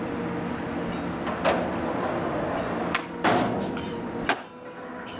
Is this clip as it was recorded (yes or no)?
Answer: yes